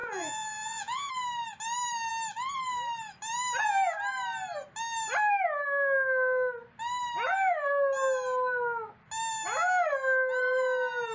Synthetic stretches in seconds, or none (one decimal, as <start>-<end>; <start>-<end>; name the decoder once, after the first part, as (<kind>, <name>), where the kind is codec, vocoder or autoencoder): 0.0-1.1 (vocoder, Vocos)

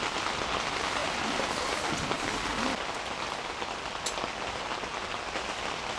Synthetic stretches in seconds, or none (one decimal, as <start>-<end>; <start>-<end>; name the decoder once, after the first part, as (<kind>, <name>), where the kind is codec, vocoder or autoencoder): none

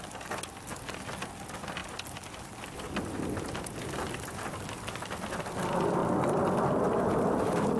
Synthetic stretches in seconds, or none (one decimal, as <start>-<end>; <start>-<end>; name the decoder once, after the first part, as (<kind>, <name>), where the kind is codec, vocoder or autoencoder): none

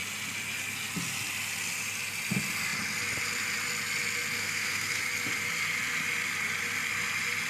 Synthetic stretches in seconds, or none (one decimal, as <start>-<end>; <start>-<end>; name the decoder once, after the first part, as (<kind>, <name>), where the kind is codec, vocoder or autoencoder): 4.4-5.0 (codec, SNAC)

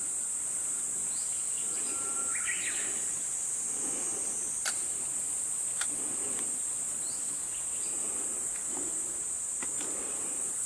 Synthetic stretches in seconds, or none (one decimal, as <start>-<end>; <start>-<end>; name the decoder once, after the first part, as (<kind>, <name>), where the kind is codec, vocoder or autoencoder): none

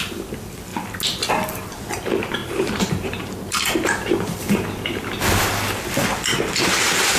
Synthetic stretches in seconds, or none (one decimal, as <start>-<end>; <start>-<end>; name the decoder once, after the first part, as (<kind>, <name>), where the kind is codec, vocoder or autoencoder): 2.4-4.4 (vocoder, BigVGAN v2)

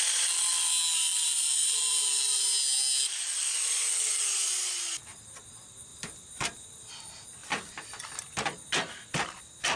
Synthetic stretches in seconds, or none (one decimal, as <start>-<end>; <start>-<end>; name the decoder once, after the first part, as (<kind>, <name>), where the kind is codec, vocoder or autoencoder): 1.1-2.5 (vocoder, BigVGAN v2); 4.4-5.0; 5.9-6.9